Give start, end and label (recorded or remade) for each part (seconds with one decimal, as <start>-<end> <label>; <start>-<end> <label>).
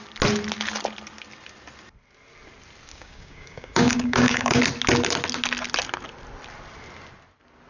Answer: 0.0-2.9 recorded; 2.9-4.6 remade; 4.6-7.7 recorded